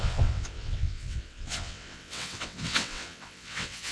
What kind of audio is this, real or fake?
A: fake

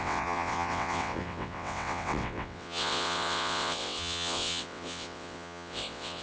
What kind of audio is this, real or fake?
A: fake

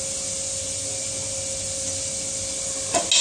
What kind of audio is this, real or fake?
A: real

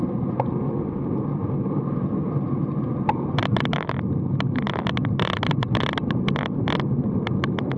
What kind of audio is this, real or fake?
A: real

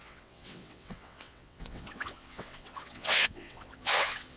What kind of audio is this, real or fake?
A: fake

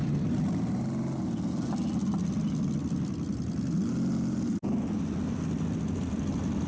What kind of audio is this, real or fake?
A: real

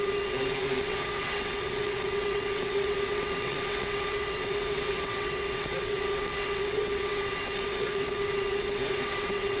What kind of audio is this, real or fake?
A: fake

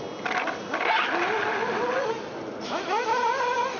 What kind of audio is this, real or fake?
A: real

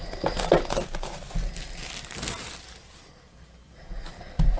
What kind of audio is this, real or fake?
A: real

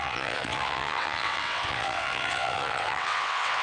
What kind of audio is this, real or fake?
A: fake